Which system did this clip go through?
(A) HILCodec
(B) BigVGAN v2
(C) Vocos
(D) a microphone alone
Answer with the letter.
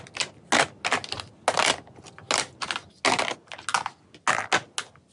D